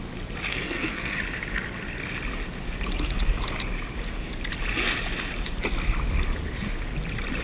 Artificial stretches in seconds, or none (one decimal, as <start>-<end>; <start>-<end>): 0.5-1.2